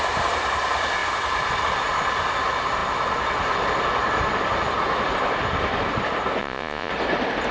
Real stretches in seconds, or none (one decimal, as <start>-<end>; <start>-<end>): 0.0-6.4; 6.9-7.5